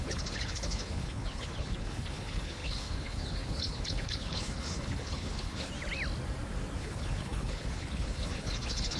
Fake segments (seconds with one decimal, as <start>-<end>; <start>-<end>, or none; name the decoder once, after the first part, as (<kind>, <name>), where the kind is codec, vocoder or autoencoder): 0.0-5.7 (codec, HILCodec); 6.8-9.0